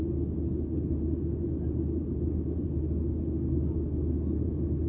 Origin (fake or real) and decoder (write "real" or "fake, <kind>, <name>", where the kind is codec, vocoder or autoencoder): real